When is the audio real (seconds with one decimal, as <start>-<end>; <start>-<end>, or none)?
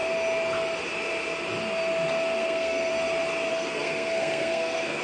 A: 0.0-2.4; 2.9-3.5